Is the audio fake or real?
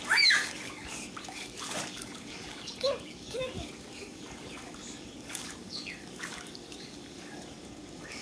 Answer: fake